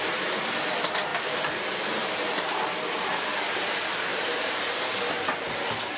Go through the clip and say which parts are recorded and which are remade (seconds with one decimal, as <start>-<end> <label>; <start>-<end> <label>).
0.0-4.1 recorded; 4.1-4.9 remade; 4.9-6.0 recorded

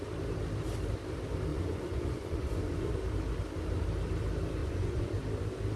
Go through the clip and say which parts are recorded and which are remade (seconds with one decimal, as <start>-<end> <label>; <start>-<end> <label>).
0.0-1.5 recorded; 1.5-2.9 remade; 2.9-4.6 recorded; 4.6-5.1 remade; 5.1-5.8 recorded

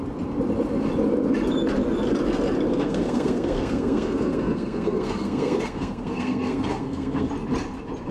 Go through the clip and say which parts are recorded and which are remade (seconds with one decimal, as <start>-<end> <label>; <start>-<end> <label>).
0.0-2.7 recorded; 2.7-7.3 remade; 7.3-8.1 recorded

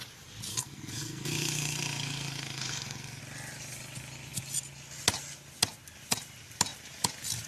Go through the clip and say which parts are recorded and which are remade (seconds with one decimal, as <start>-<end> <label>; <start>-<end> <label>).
0.0-0.5 recorded; 0.5-3.2 remade; 3.2-7.5 recorded

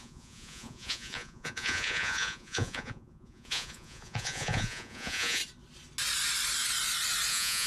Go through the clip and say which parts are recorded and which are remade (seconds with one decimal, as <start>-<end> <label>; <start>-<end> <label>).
0.0-5.4 remade; 5.4-7.3 recorded; 7.3-7.7 remade

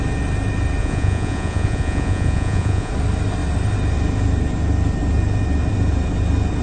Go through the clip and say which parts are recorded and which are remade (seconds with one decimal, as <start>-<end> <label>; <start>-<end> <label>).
0.0-0.8 recorded; 0.8-2.9 remade; 2.9-6.6 recorded

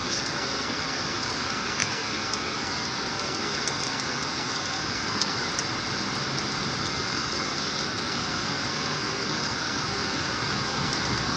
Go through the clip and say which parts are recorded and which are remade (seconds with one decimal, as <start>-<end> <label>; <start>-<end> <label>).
0.0-5.5 remade; 5.5-6.8 recorded; 6.8-11.4 remade

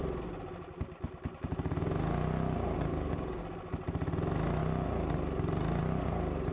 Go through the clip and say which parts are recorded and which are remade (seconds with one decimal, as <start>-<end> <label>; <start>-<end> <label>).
0.0-2.9 recorded; 2.9-3.4 remade; 3.4-6.5 recorded